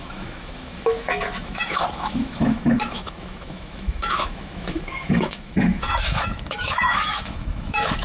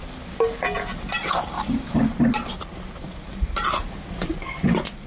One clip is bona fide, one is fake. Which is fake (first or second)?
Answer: first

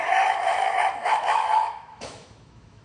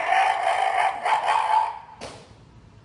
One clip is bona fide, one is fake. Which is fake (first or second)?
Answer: first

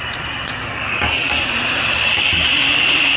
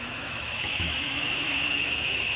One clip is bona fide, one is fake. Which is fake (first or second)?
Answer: second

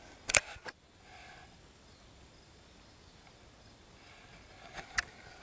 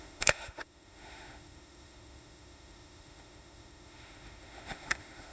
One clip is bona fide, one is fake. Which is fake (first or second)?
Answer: second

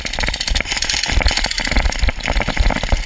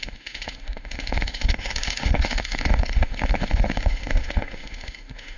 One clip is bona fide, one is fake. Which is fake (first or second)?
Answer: second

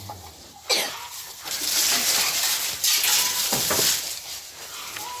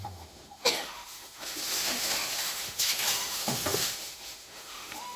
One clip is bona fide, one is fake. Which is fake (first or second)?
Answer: second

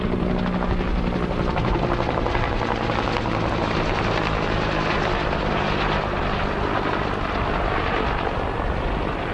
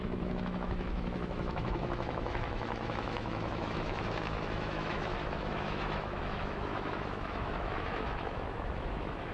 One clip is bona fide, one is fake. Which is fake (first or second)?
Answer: second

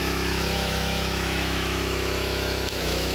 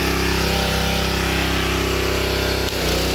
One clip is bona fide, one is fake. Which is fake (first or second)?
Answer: first